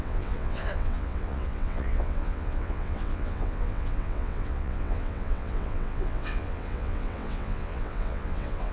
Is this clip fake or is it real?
fake